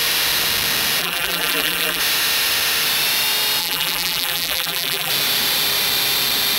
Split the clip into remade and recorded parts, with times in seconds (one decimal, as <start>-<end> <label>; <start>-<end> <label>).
0.0-1.0 recorded; 1.0-2.0 remade; 2.0-3.6 recorded; 3.6-5.1 remade; 5.1-6.6 recorded

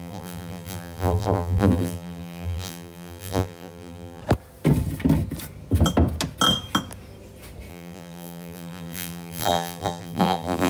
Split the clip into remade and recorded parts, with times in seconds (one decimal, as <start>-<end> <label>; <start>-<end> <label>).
0.0-4.2 remade; 4.2-7.7 recorded; 7.7-10.7 remade